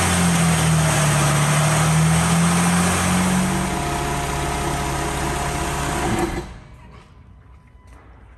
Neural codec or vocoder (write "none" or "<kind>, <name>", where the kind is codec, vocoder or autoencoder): none